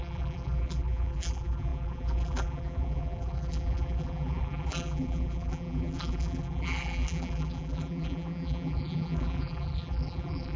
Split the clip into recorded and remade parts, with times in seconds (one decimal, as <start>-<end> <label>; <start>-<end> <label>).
0.0-10.6 remade

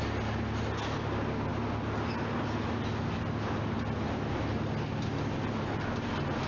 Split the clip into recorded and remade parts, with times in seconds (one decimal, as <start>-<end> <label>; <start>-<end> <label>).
0.0-6.5 recorded